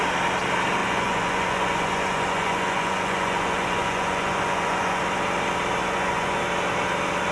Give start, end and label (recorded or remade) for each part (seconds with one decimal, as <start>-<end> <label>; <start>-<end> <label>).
0.0-0.8 recorded; 0.8-5.0 remade; 5.0-5.8 recorded; 5.8-6.4 remade; 6.4-7.3 recorded

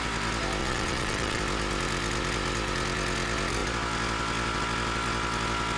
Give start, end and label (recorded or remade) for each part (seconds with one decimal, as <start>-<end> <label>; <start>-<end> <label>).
0.0-0.6 recorded; 0.6-1.4 remade; 1.4-5.8 recorded

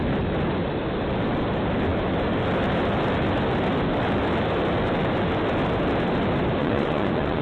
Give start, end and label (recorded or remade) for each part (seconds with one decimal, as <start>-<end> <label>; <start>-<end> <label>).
0.0-6.6 recorded; 6.6-7.4 remade

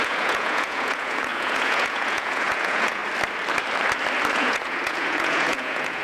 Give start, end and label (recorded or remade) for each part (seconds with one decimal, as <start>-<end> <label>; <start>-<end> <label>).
0.0-3.0 remade; 3.0-4.3 recorded; 4.3-6.0 remade

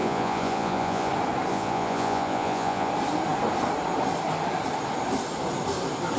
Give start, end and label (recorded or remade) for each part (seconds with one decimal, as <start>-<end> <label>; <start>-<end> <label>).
0.0-1.1 remade; 1.1-1.5 recorded; 1.5-2.9 remade; 2.9-6.2 recorded

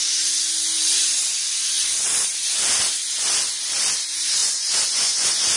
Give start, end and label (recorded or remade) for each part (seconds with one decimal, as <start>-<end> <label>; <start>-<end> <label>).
0.0-4.4 recorded; 4.4-5.6 remade

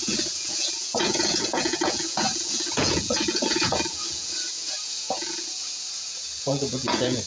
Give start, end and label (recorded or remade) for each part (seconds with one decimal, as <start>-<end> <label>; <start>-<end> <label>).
0.0-7.3 remade

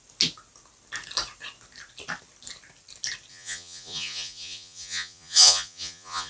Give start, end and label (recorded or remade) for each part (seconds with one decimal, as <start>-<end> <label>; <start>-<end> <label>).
0.0-3.3 recorded; 3.3-6.3 remade